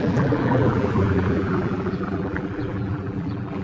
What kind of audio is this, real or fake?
fake